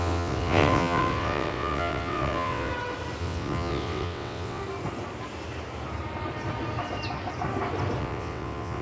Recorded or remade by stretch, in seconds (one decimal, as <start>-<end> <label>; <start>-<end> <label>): 0.0-2.7 remade; 2.7-3.2 recorded; 3.2-4.6 remade; 4.6-8.0 recorded; 8.0-8.8 remade